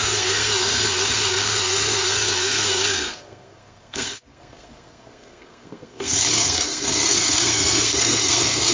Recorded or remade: remade